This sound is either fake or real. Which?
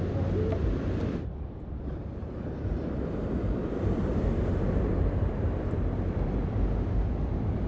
real